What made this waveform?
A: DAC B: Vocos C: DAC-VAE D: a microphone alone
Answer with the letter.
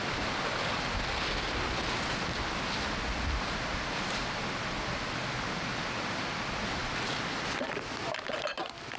D